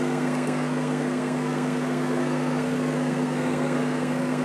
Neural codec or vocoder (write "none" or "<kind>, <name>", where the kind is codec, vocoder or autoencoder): codec, SNAC